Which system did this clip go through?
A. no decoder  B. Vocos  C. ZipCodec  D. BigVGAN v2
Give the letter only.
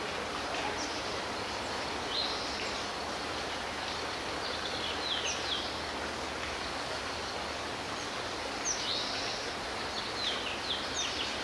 A